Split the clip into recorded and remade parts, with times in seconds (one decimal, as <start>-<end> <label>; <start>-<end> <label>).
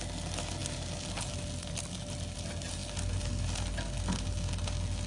0.0-5.1 recorded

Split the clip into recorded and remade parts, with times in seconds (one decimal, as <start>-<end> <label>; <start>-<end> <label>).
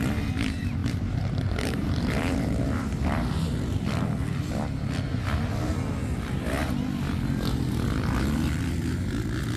0.0-0.8 recorded; 0.8-3.3 remade; 3.3-9.6 recorded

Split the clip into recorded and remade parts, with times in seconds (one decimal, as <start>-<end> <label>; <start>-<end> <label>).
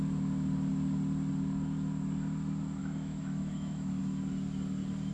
0.0-2.8 recorded; 2.8-4.0 remade; 4.0-5.1 recorded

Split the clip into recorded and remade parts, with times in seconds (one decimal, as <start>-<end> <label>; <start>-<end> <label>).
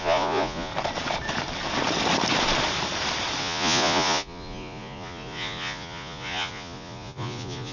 0.0-0.7 remade; 0.7-3.4 recorded; 3.4-7.7 remade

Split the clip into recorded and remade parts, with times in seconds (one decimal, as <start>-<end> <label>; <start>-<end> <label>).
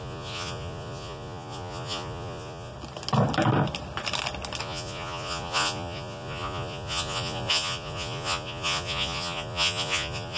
0.0-2.7 remade; 2.7-4.6 recorded; 4.6-10.4 remade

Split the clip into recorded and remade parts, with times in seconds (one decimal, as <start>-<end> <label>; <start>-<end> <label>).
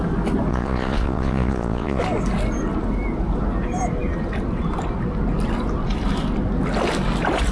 0.0-0.5 recorded; 0.5-2.0 remade; 2.0-7.5 recorded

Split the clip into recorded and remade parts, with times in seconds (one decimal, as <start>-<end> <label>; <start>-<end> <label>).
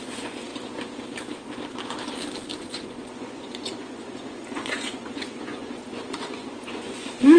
0.0-0.5 remade; 0.5-2.6 recorded; 2.6-7.4 remade